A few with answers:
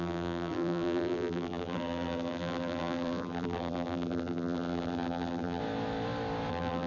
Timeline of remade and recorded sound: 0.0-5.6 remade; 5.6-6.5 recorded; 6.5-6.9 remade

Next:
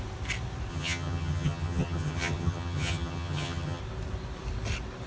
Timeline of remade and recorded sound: 0.0-0.7 recorded; 0.7-3.8 remade; 3.8-5.1 recorded

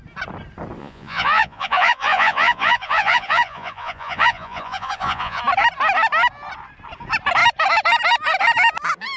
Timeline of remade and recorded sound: 0.0-0.8 recorded; 0.8-5.4 remade; 5.4-9.2 recorded

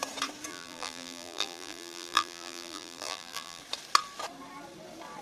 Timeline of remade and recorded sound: 0.0-0.5 recorded; 0.5-3.6 remade; 3.6-5.2 recorded

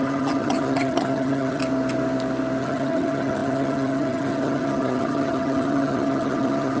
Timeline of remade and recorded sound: 0.0-1.6 remade; 1.6-2.6 recorded; 2.6-6.8 remade

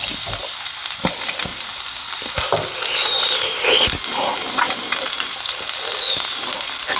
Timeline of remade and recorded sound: 0.0-7.0 recorded